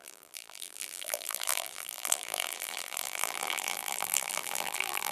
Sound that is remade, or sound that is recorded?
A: remade